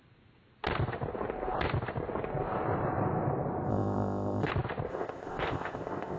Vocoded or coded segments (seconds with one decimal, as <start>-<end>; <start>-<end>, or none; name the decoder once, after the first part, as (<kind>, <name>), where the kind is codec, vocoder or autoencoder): 3.7-4.5 (codec, ZipCodec); 4.9-6.2